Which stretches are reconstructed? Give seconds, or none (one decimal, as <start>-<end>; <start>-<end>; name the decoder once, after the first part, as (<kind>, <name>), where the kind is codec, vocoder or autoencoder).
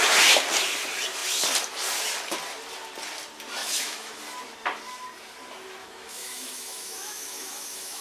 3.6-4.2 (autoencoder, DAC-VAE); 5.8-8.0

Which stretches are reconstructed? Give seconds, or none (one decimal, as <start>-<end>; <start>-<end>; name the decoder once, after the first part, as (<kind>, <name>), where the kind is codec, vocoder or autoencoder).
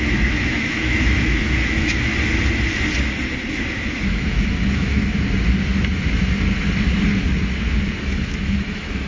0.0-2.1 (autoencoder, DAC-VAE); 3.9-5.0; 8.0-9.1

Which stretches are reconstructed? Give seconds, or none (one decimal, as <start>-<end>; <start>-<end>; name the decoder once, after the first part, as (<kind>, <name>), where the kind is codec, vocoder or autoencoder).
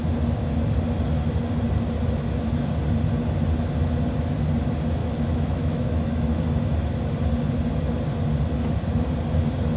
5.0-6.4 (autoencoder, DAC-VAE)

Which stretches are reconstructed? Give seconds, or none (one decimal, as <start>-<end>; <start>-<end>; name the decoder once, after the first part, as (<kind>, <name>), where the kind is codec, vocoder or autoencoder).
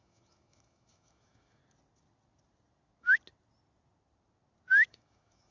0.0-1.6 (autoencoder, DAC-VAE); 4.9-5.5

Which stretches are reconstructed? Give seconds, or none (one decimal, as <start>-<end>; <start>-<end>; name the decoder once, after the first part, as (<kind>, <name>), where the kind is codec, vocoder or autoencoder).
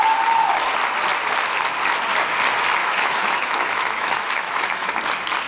2.8-4.9 (autoencoder, DAC-VAE)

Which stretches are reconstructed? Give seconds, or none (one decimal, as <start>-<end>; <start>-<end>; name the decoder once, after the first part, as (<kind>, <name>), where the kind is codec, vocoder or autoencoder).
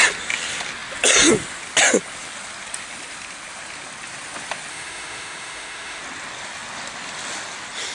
4.7-6.0 (autoencoder, DAC-VAE)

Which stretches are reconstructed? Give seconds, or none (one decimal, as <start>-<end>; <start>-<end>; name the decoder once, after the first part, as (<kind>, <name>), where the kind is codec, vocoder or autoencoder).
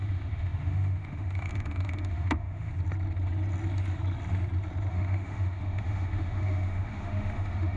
0.0-2.7 (autoencoder, DAC-VAE); 4.9-7.8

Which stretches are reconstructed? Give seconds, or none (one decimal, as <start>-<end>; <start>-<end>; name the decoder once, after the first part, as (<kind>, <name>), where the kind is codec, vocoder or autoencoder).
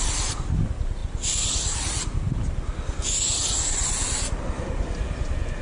none